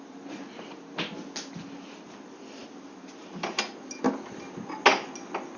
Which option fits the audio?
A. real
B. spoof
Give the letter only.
A